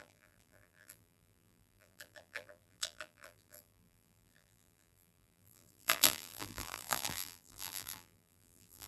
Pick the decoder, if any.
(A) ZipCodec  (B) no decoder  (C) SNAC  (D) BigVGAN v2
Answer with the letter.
D